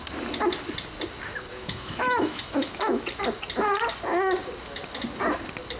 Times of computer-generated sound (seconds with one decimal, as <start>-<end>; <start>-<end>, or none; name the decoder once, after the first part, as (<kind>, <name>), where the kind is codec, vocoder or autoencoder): 1.5-3.2 (autoencoder, DAC-VAE)

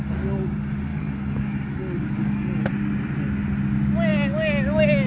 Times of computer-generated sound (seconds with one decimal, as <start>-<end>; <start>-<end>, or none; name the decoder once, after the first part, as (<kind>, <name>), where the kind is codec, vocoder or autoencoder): 0.9-2.7 (codec, DAC)

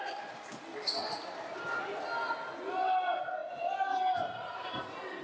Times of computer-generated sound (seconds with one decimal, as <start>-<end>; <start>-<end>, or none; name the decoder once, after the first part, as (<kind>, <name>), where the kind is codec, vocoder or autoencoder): none

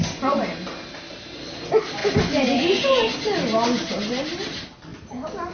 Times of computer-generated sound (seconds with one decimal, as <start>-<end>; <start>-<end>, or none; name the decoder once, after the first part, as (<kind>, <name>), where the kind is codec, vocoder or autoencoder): none

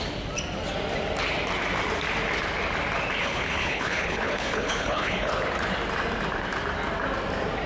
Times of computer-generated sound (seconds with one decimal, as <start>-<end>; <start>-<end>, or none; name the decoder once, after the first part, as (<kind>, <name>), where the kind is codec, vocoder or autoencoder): 3.2-5.3 (codec, HILCodec)

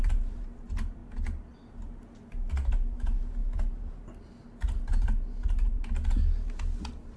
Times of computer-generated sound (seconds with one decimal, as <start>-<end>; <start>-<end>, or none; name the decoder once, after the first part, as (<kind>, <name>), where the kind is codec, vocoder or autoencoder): none